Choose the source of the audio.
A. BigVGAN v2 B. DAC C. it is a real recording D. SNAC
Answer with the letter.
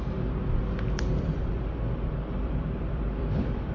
A